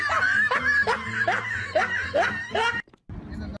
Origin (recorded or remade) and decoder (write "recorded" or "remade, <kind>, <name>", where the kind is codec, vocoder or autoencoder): recorded